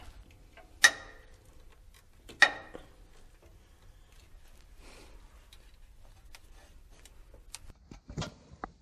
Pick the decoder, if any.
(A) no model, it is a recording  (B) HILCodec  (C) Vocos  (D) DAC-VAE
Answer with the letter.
A